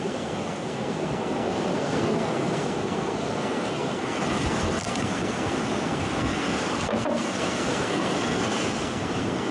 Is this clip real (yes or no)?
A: no